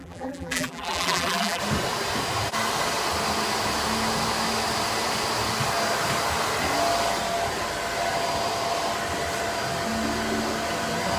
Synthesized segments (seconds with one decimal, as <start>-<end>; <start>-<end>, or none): 0.0-1.6